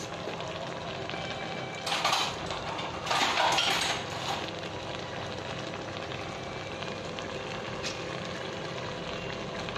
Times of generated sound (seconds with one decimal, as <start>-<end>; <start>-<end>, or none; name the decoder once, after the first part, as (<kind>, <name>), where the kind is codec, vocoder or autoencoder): none